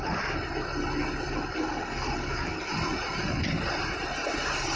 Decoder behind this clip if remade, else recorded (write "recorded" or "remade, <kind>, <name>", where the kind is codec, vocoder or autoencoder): recorded